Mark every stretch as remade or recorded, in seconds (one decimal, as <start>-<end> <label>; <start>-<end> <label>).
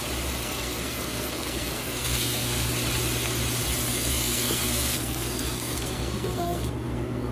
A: 0.0-0.4 recorded; 0.4-2.7 remade; 2.7-3.9 recorded; 3.9-7.3 remade